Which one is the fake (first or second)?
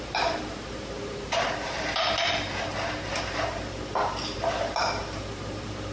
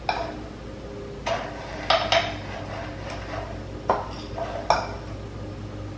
first